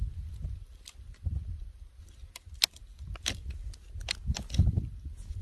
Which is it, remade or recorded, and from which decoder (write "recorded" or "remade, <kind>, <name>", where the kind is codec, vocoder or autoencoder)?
recorded